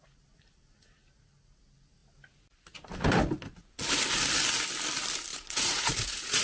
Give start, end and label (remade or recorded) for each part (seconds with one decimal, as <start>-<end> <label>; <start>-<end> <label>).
0.0-5.3 recorded; 5.3-6.4 remade